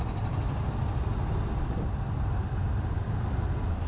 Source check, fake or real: real